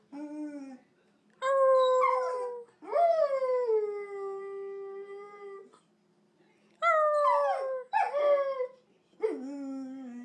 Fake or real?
real